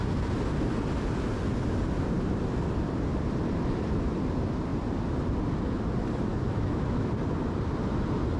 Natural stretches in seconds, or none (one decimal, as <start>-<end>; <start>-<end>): 0.0-6.3; 7.1-8.4